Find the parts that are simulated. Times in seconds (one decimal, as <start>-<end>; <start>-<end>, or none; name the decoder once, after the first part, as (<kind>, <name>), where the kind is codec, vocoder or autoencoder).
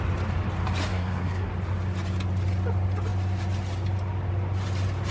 0.9-1.5 (codec, SNAC)